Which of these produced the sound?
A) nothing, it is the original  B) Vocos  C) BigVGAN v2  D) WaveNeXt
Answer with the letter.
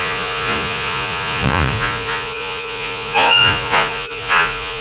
B